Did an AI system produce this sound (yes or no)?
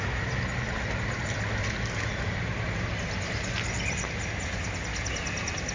no